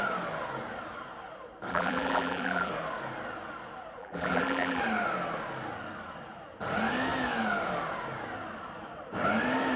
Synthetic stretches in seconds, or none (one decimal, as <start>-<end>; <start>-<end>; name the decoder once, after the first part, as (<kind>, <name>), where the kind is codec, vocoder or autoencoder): 1.7-2.7 (vocoder, BigVGAN v2); 4.0-4.8